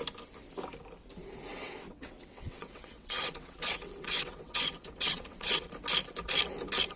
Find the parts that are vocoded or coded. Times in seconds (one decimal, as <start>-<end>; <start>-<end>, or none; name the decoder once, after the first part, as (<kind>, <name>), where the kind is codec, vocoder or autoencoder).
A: 1.5-5.7 (vocoder, WaveNeXt)